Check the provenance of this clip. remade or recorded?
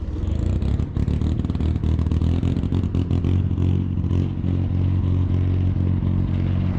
recorded